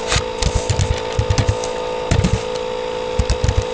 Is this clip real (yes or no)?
yes